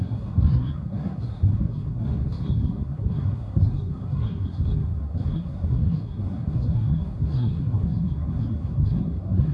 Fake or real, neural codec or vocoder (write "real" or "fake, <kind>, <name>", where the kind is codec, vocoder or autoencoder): fake, codec, SNAC